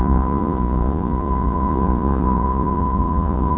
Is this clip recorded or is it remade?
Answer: remade